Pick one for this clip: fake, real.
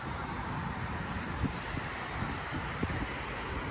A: real